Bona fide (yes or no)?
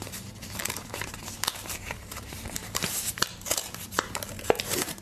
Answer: no